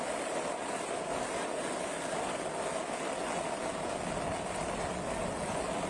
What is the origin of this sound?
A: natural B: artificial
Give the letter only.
A